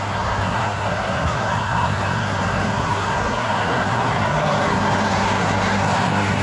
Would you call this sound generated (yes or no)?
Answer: yes